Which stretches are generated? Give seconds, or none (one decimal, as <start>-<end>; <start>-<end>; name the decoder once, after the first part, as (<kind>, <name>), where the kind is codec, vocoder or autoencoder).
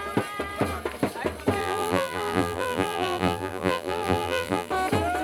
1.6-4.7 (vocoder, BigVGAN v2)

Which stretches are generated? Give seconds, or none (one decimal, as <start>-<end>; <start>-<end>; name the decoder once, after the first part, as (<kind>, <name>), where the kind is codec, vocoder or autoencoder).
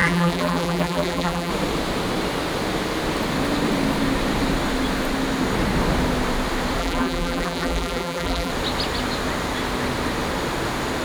0.0-1.5 (vocoder, BigVGAN v2); 6.8-8.5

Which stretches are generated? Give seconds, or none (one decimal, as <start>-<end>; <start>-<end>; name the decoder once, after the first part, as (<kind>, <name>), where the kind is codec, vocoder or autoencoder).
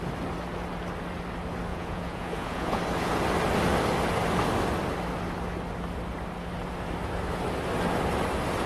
1.7-2.8 (vocoder, Vocos)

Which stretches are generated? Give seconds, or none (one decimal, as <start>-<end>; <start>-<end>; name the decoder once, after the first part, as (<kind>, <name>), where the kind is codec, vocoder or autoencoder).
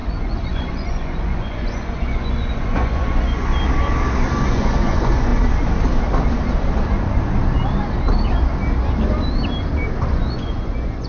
0.0-3.5 (vocoder, Vocos); 4.5-5.3; 10.1-11.1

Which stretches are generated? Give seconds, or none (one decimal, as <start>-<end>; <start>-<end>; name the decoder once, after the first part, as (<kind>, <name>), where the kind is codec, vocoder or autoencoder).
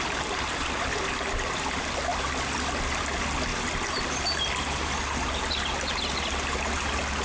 2.1-2.8 (vocoder, BigVGAN v2); 3.5-4.8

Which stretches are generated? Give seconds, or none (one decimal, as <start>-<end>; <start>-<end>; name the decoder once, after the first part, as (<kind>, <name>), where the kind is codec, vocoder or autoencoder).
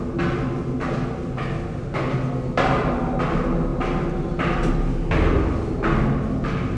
none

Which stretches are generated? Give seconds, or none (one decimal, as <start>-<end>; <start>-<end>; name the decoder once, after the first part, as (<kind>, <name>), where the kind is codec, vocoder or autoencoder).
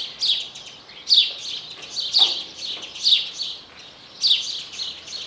none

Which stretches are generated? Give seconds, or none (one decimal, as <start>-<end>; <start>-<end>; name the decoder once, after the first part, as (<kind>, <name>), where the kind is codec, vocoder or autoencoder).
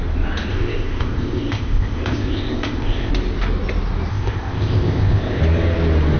0.5-3.1 (codec, ZipCodec); 4.1-5.4